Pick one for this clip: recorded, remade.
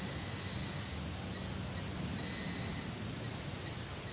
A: recorded